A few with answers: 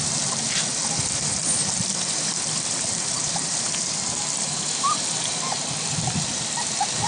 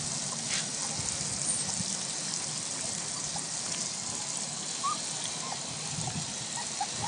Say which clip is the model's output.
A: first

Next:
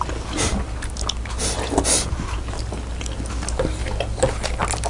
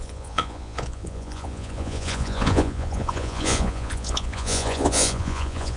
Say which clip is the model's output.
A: second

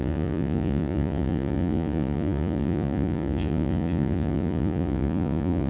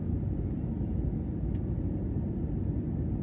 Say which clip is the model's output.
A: first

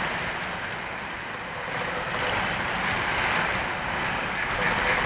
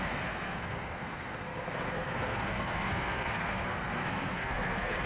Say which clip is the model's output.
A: second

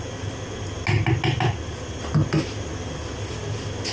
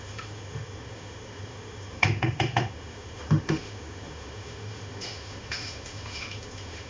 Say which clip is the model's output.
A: second